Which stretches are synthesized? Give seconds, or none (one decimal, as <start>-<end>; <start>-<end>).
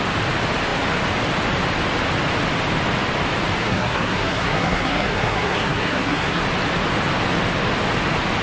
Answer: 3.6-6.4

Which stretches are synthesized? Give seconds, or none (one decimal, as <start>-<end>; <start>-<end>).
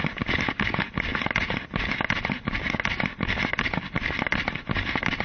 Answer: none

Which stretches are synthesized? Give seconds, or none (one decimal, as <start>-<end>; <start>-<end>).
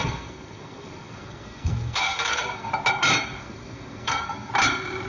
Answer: 0.0-2.7; 3.4-4.5